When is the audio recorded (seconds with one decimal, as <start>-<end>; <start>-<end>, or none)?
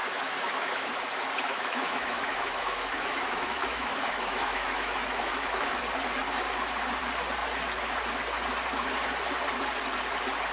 0.9-1.5; 5.8-10.5